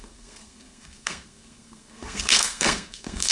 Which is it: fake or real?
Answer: fake